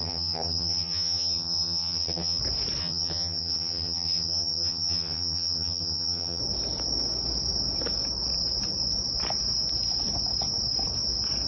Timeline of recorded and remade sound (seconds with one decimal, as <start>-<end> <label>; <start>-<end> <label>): 0.0-2.4 remade; 2.4-2.8 recorded; 2.8-6.4 remade; 6.4-11.5 recorded